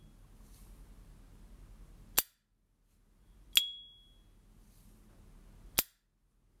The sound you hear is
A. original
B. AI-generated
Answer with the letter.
A